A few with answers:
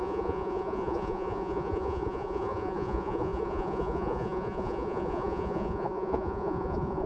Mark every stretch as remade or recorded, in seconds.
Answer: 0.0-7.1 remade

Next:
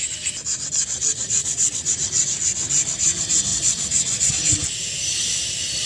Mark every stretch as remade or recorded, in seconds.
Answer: 0.0-1.4 recorded; 1.4-1.9 remade; 1.9-3.5 recorded; 3.5-4.3 remade; 4.3-5.9 recorded

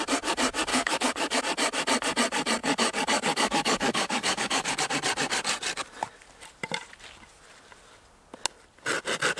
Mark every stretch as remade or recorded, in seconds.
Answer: 0.0-0.7 recorded; 0.7-1.4 remade; 1.4-2.6 recorded; 2.6-4.8 remade; 4.8-9.4 recorded

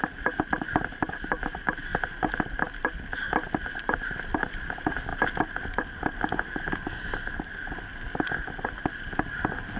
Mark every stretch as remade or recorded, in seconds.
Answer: 0.0-9.8 recorded

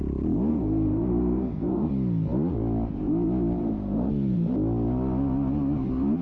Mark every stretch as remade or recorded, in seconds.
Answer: 0.0-0.5 recorded; 0.5-1.9 remade; 1.9-3.6 recorded; 3.6-4.1 remade; 4.1-6.2 recorded

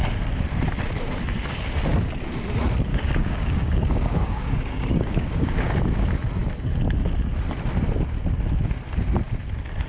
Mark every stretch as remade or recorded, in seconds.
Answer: 0.0-2.9 recorded; 2.9-5.8 remade; 5.8-9.9 recorded

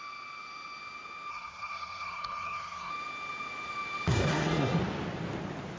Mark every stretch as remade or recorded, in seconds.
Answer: 0.0-1.3 recorded; 1.3-2.9 remade; 2.9-4.1 recorded; 4.1-4.8 remade; 4.8-5.8 recorded